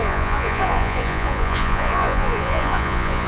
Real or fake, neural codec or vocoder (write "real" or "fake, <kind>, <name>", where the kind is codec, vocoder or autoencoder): fake, vocoder, Vocos